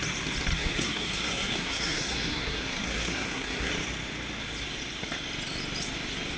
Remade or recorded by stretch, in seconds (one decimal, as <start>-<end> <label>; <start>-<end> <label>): 0.0-0.5 recorded; 0.5-3.7 remade; 3.7-6.4 recorded

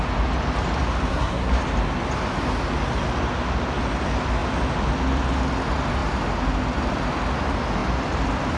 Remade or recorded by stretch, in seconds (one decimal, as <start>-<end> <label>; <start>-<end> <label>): 0.0-1.1 recorded; 1.1-1.6 remade; 1.6-8.6 recorded

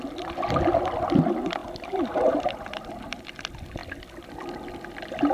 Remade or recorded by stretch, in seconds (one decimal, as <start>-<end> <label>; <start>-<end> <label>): 0.0-5.3 recorded

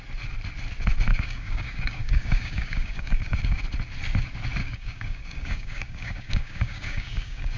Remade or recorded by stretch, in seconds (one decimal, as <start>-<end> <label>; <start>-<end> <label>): 0.0-1.1 recorded; 1.1-3.6 remade; 3.6-4.6 recorded; 4.6-7.6 remade

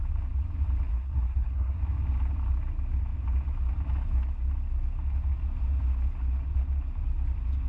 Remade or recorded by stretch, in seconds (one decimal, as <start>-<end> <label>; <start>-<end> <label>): 0.0-0.9 recorded; 0.9-1.8 remade; 1.8-7.7 recorded

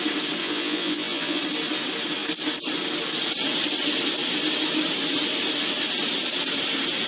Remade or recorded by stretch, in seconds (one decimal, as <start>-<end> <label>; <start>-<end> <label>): 0.0-0.4 recorded; 0.4-1.4 remade; 1.4-7.1 recorded

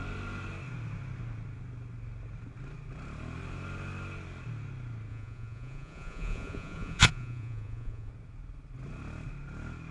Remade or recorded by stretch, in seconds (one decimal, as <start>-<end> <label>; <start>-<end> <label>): 0.0-5.1 recorded; 5.1-8.1 remade; 8.1-9.9 recorded

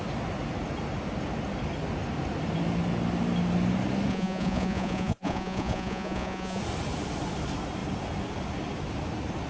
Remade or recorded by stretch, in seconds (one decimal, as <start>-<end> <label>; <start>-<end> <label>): 0.0-4.1 recorded; 4.1-6.6 remade; 6.6-9.5 recorded